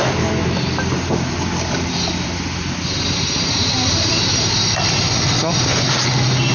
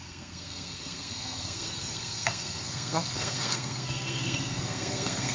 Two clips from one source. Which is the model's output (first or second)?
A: second